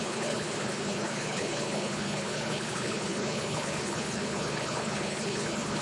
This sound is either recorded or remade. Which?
remade